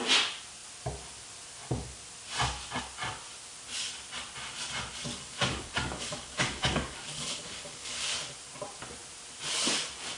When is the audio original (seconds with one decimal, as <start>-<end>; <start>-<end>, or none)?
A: 0.0-5.1; 8.1-10.2